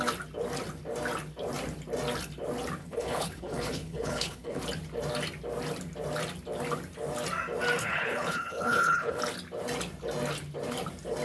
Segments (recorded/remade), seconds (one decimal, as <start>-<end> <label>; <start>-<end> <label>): 0.0-2.8 recorded; 2.8-4.6 remade; 4.6-7.8 recorded; 7.8-9.2 remade; 9.2-11.2 recorded